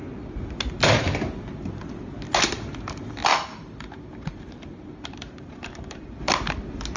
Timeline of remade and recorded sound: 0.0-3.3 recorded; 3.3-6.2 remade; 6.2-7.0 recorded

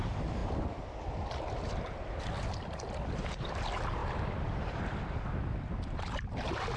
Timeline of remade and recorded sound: 0.0-0.4 recorded; 0.4-2.4 remade; 2.4-4.0 recorded; 4.0-5.2 remade; 5.2-6.8 recorded

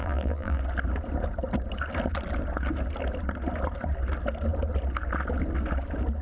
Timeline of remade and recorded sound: 0.0-0.6 remade; 0.6-6.2 recorded

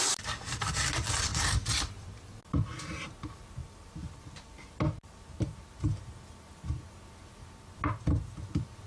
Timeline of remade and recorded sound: 0.0-3.6 recorded; 3.6-4.6 remade; 4.6-8.9 recorded